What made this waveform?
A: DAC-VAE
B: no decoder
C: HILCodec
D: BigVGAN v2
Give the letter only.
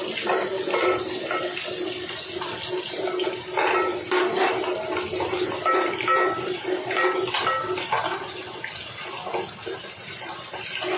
B